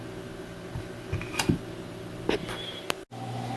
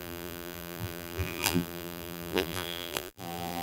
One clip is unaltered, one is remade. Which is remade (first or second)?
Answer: second